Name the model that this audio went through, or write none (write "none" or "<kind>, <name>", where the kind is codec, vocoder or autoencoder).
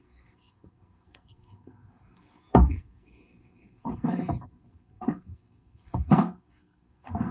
codec, SNAC